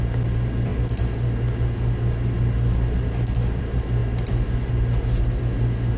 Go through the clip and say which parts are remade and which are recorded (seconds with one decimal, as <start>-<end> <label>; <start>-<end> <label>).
0.0-6.0 recorded